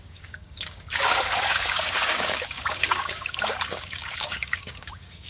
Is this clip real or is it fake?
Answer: fake